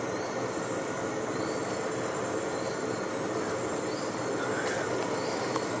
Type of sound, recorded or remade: recorded